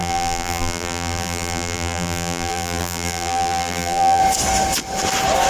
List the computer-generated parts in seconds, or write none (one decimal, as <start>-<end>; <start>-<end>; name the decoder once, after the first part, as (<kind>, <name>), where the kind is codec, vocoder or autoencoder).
0.0-4.2 (vocoder, BigVGAN v2)